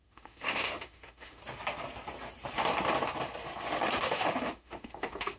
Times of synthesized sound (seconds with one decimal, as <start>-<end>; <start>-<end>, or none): 0.0-1.4; 4.0-5.4